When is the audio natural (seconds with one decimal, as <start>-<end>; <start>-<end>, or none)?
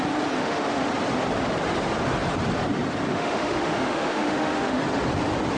0.0-0.4; 0.9-3.1; 4.8-5.6